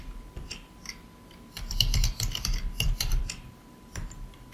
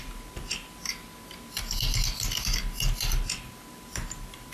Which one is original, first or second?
second